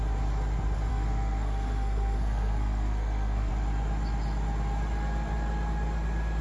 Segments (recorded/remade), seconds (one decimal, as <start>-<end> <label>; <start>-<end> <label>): 0.0-0.9 recorded; 0.9-3.5 remade; 3.5-6.4 recorded